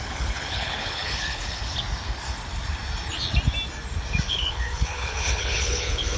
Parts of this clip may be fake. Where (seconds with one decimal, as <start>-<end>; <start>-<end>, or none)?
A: 0.0-1.6; 4.3-6.2